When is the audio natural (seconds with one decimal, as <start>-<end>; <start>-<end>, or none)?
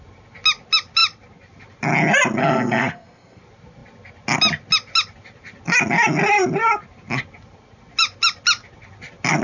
0.0-2.4; 3.4-9.4